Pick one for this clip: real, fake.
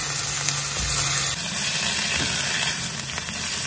real